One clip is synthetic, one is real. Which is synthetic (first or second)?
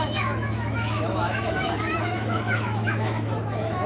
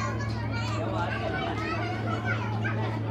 first